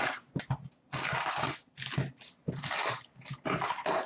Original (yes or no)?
yes